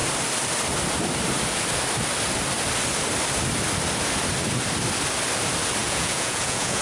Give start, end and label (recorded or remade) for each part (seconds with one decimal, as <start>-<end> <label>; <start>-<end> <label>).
0.0-5.8 recorded; 5.8-6.8 remade